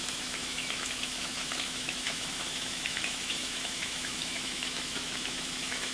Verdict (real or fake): fake